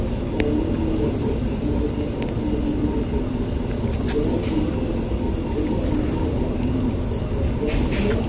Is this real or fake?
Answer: real